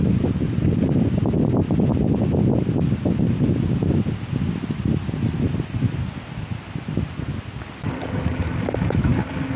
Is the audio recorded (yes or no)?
yes